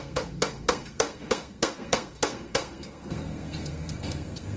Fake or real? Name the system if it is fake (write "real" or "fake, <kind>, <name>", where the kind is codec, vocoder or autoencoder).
fake, codec, SNAC